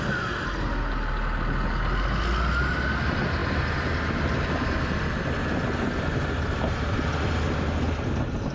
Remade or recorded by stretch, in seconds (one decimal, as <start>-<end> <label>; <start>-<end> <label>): 0.0-8.5 recorded

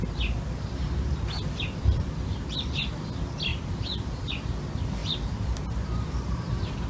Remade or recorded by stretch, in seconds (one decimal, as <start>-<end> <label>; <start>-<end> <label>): 0.0-1.8 recorded; 1.8-2.9 remade; 2.9-3.5 recorded; 3.5-4.2 remade; 4.2-5.0 recorded; 5.0-6.9 remade